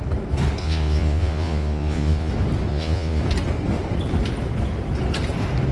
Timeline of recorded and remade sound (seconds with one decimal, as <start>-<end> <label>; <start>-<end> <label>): 0.0-0.6 recorded; 0.6-2.3 remade; 2.3-2.7 recorded; 2.7-3.2 remade; 3.2-5.7 recorded